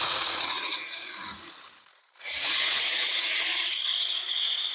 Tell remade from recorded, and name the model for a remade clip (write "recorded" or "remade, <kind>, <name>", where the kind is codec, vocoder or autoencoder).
remade, vocoder, Vocos